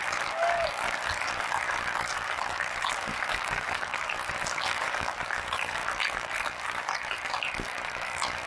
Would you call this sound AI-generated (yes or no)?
yes